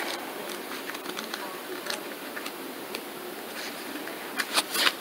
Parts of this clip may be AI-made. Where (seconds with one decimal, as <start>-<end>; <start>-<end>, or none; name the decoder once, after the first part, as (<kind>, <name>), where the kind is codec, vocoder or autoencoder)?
0.0-1.7 (vocoder, BigVGAN v2)